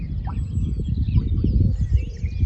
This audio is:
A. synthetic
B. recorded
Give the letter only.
B